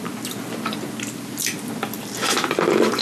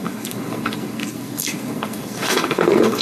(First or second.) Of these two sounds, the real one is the first